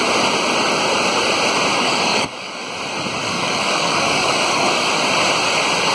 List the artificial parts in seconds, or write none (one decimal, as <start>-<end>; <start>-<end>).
1.7-2.7; 3.2-4.9